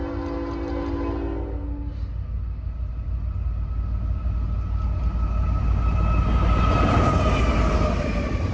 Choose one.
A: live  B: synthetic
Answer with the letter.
A